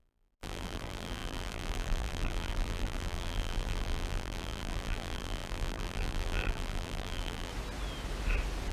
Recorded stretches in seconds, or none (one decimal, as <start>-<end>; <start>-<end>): 7.5-8.7